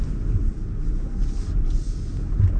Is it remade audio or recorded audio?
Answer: recorded